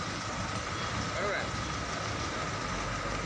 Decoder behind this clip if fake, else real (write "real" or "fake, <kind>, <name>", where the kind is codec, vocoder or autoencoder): real